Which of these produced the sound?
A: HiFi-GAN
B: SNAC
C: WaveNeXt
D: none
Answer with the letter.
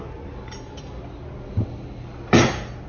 D